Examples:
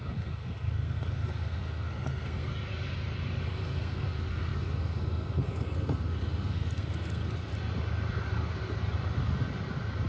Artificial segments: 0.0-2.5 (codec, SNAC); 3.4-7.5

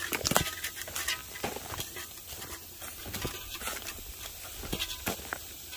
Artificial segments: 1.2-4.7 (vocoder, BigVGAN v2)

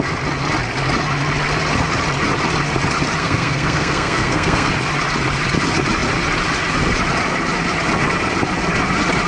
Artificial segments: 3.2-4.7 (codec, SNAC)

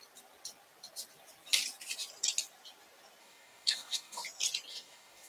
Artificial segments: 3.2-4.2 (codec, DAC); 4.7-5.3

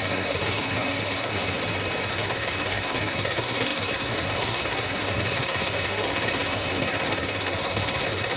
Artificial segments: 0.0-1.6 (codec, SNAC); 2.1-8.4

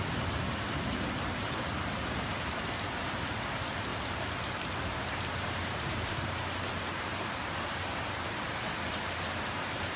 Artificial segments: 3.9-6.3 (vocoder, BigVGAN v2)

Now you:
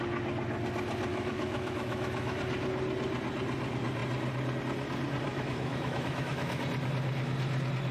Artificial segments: 1.1-2.4 (autoencoder, DAC-VAE); 5.3-6.6